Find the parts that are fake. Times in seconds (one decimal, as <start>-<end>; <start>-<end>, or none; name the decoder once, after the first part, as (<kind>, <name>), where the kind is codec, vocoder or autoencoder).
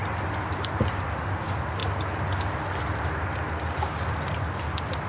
none